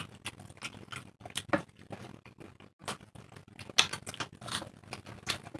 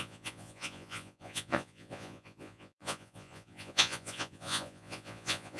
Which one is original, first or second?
first